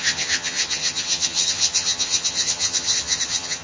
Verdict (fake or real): fake